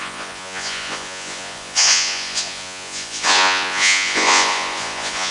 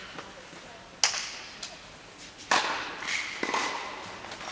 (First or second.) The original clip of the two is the second